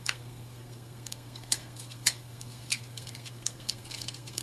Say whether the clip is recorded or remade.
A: remade